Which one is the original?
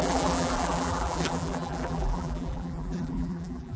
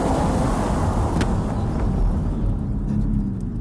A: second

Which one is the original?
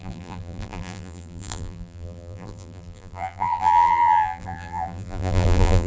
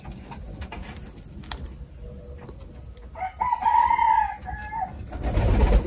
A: second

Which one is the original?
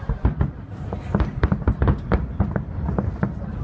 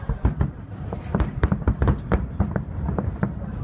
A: first